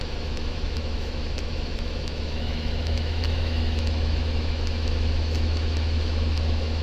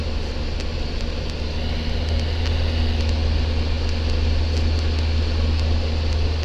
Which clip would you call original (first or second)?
second